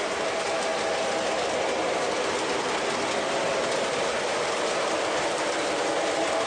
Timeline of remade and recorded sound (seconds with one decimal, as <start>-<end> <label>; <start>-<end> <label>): 0.0-6.5 recorded